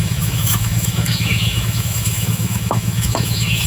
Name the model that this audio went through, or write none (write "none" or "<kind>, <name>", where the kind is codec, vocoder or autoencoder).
autoencoder, DAC-VAE